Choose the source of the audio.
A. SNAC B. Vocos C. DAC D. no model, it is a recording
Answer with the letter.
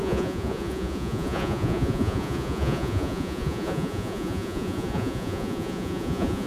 B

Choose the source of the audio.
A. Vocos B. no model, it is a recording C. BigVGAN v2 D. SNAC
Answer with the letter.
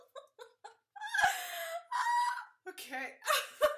B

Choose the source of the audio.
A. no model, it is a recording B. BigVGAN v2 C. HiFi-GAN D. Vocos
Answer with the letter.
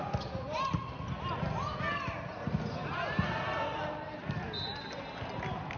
A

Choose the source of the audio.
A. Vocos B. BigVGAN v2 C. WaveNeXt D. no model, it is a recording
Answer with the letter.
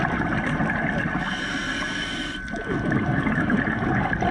D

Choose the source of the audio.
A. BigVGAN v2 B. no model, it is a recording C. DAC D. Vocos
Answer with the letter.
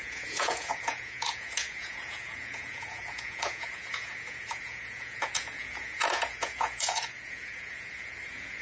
D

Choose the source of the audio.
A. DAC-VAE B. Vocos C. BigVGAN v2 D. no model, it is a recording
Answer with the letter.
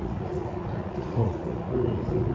B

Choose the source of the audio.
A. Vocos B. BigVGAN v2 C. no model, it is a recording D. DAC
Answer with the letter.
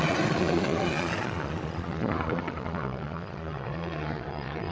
A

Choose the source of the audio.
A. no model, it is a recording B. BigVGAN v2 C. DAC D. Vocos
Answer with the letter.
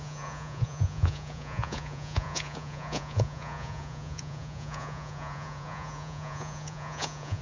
D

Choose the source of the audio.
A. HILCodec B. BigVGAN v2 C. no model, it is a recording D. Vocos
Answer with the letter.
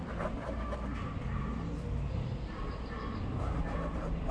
C